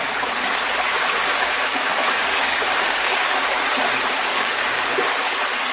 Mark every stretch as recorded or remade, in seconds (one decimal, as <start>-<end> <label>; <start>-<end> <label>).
0.0-0.9 recorded; 0.9-3.6 remade; 3.6-4.3 recorded; 4.3-4.8 remade; 4.8-5.7 recorded